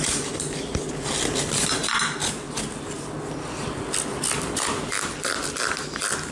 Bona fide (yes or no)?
yes